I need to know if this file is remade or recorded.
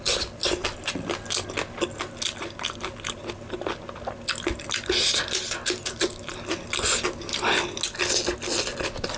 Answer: recorded